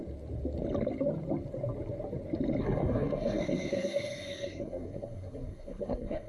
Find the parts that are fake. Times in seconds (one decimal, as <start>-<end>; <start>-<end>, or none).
2.6-6.3